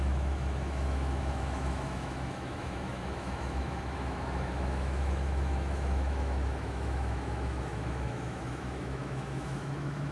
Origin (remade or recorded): remade